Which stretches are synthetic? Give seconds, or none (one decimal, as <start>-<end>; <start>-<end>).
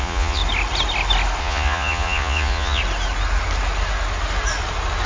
0.0-0.4; 1.4-2.8